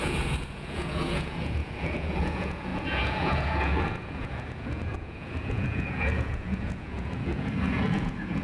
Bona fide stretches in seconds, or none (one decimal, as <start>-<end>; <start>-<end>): none